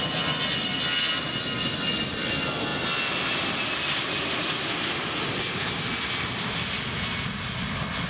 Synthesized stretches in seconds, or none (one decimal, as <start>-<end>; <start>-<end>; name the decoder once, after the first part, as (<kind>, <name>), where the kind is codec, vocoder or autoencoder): none